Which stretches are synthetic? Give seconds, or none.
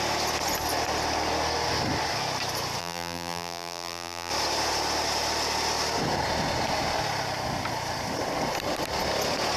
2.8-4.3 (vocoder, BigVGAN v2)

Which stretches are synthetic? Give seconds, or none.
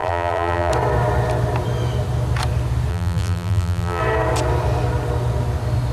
0.0-0.7 (vocoder, BigVGAN v2); 2.9-4.0